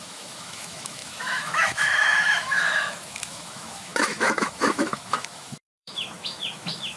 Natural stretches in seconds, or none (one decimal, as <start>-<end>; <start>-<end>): none